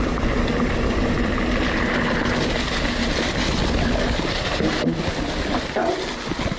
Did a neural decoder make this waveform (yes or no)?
no